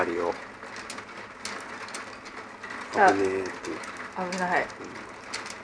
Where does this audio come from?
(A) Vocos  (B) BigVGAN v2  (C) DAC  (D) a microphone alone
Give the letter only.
D